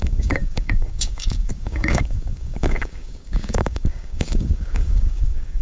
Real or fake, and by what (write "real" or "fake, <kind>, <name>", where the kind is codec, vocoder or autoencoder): fake, codec, DAC